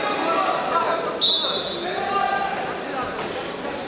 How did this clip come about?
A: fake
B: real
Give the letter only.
B